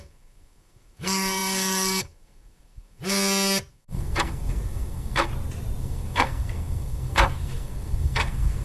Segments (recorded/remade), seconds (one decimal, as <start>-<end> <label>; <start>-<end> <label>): 0.0-3.0 remade; 3.0-3.7 recorded; 3.7-5.3 remade; 5.3-5.8 recorded; 5.8-8.6 remade